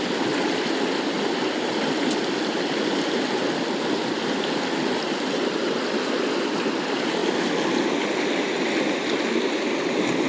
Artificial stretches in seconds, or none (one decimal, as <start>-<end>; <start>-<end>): none